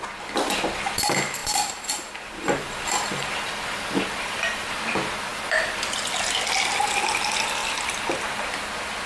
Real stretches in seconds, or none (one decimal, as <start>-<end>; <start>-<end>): 0.0-1.4; 4.8-5.3; 6.2-9.1